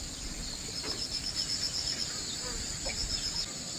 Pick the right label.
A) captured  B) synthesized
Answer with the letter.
A